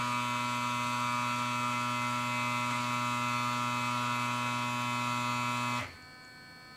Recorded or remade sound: recorded